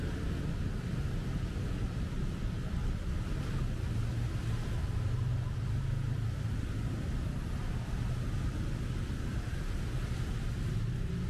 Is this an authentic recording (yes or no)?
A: yes